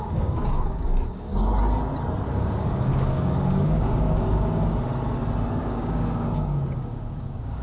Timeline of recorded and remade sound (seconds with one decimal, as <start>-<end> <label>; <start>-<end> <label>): 0.0-1.3 remade; 1.3-2.3 recorded; 2.3-4.7 remade; 4.7-5.6 recorded; 5.6-7.6 remade